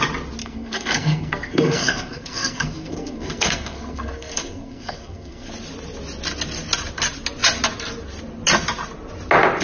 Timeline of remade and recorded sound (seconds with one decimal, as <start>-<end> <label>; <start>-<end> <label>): 0.0-0.4 recorded; 0.4-5.5 remade; 5.5-9.6 recorded